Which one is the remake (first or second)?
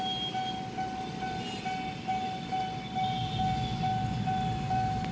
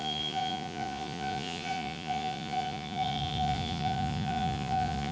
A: second